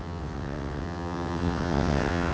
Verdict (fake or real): fake